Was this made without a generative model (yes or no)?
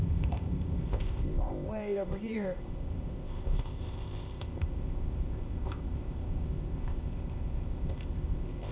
no